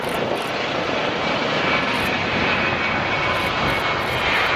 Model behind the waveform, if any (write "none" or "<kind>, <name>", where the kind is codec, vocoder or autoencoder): none